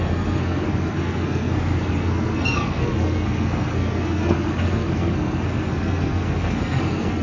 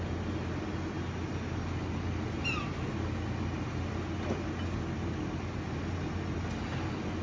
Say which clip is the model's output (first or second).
first